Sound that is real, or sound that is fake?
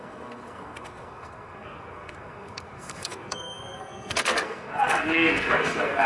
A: fake